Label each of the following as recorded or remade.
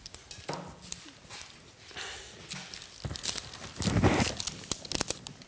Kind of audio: recorded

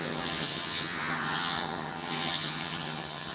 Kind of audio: remade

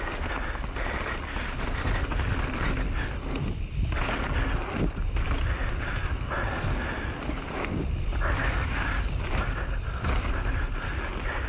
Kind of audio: recorded